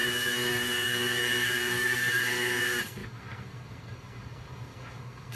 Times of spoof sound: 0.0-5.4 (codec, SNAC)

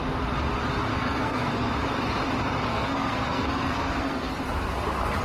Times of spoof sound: 0.9-1.7 (codec, SNAC); 2.7-4.3

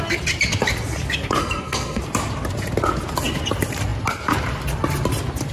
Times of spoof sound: 1.4-2.0 (codec, SNAC)

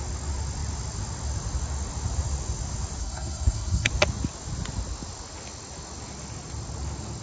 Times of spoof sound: 3.0-3.9 (codec, SNAC)

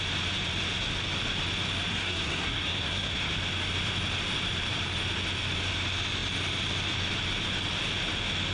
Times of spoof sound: 1.9-3.3 (codec, SNAC)

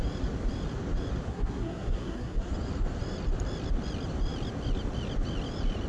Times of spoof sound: 1.3-2.5 (codec, SNAC)

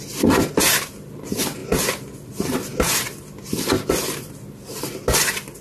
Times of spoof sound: none